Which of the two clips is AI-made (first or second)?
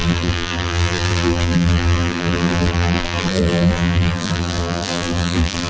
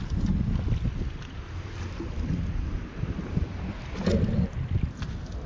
first